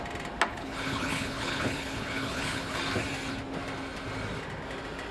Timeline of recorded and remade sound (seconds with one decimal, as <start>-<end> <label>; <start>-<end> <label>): 0.0-0.5 recorded; 0.5-2.8 remade; 2.8-5.1 recorded